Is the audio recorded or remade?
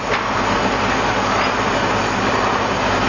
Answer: recorded